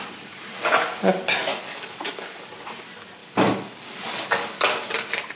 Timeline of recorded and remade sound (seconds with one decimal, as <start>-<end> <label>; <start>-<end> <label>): 0.0-1.5 recorded; 1.5-2.5 remade; 2.5-3.2 recorded; 3.2-4.6 remade; 4.6-5.4 recorded